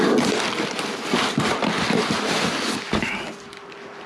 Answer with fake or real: real